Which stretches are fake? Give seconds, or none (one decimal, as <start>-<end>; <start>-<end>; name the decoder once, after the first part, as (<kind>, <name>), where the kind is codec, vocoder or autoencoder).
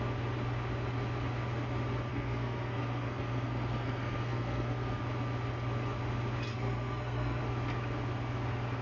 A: 2.1-5.0 (codec, SNAC); 6.5-7.4